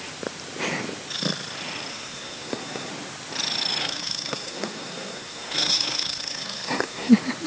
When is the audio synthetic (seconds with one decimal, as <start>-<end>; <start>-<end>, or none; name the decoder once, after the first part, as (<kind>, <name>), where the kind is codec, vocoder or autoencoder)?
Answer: 1.9-2.9 (codec, SNAC); 3.8-7.1